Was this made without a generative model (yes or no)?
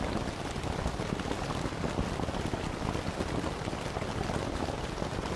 yes